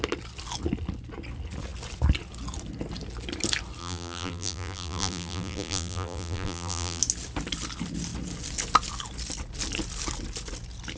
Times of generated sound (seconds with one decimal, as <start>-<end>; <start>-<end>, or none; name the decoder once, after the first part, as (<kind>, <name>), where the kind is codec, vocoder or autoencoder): 3.8-7.0 (vocoder, BigVGAN v2)